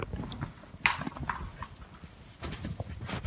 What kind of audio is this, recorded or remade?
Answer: recorded